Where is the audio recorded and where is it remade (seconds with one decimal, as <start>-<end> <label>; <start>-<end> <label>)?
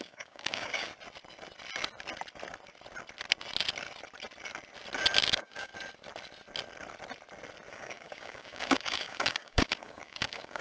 0.0-0.9 remade; 0.9-5.2 recorded; 5.2-5.7 remade; 5.7-7.7 recorded; 7.7-10.6 remade